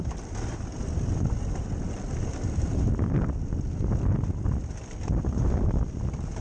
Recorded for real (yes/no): no